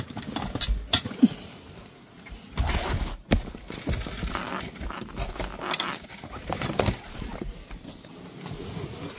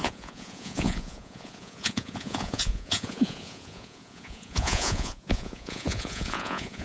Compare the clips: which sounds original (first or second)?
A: first